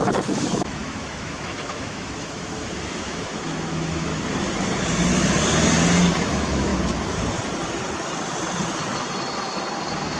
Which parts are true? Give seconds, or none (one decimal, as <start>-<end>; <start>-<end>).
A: 4.1-6.2; 6.7-10.2